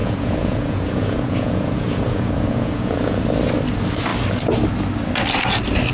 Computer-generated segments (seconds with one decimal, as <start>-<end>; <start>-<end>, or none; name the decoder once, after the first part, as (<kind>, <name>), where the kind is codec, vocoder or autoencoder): 0.0-3.2 (vocoder, Vocos)